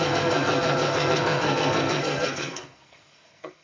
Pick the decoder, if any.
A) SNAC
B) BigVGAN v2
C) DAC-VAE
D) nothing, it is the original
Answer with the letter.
A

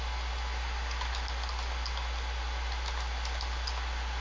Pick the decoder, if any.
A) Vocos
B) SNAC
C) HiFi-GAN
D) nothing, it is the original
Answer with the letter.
D